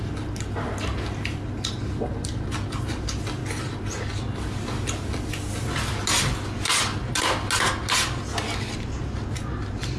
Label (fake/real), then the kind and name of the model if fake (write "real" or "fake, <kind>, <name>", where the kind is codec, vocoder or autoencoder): real